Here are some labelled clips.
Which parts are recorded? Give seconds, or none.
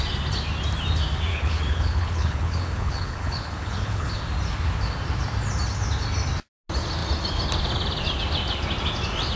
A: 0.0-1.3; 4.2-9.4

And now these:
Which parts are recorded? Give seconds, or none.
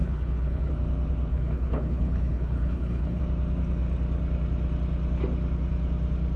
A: 0.7-1.3; 3.2-6.4